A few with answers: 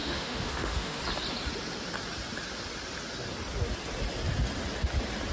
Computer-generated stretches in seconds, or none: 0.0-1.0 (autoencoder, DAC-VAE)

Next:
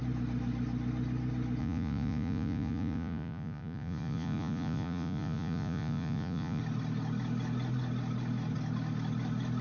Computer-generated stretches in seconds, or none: 1.6-6.6 (vocoder, Vocos)

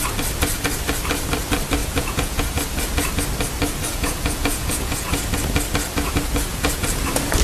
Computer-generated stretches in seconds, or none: 1.8-2.5 (vocoder, Vocos); 3.9-5.2; 6.5-7.0

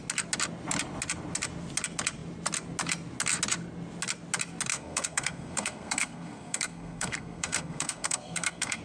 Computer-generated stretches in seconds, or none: 4.7-8.8 (codec, SNAC)